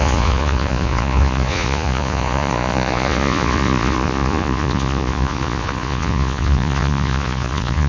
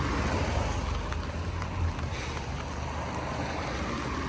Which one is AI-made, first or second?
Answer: first